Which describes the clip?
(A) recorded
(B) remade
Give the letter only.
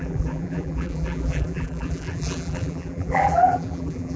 B